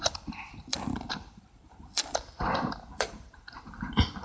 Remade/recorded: remade